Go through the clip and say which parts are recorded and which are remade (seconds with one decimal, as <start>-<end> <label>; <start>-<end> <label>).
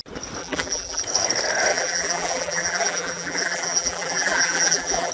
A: 0.0-0.4 recorded; 0.4-1.0 remade; 1.0-1.7 recorded; 1.7-5.1 remade